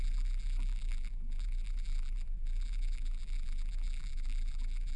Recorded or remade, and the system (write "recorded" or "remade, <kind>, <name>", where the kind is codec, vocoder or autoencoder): remade, vocoder, BigVGAN v2